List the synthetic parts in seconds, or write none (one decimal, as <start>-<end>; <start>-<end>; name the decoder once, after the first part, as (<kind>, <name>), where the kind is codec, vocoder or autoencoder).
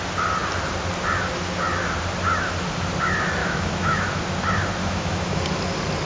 3.4-4.2 (autoencoder, DAC-VAE); 4.8-5.4